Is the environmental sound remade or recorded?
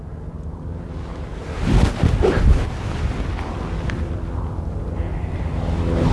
recorded